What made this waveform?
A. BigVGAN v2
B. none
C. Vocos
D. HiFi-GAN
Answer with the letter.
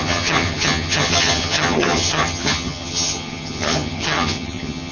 D